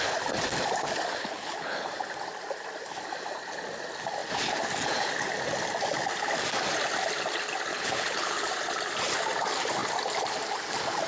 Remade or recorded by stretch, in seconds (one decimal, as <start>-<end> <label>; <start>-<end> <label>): 0.0-1.2 recorded; 1.2-1.9 remade; 1.9-7.7 recorded; 7.7-8.5 remade; 8.5-11.1 recorded